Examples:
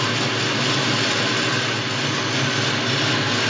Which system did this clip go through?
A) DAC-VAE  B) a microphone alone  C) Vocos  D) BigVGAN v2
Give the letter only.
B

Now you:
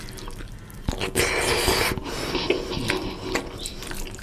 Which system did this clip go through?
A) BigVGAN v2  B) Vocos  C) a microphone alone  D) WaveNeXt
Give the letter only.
C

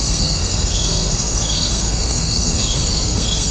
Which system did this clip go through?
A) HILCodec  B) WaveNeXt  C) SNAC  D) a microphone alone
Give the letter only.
C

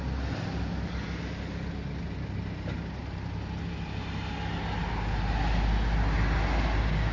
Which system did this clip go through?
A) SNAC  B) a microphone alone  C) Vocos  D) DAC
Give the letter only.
B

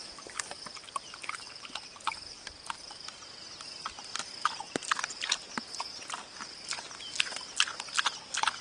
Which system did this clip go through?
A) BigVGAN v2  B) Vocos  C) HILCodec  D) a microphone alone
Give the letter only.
D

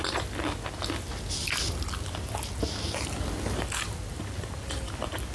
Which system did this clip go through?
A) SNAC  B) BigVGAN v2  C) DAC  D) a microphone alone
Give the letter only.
D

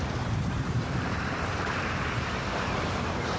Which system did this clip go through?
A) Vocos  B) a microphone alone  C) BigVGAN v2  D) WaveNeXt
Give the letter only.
C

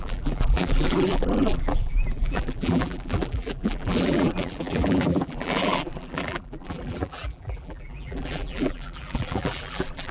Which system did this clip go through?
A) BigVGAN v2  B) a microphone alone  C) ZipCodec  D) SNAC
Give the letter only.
A